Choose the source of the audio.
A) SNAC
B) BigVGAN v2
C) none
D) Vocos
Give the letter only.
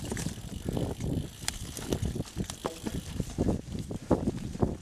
C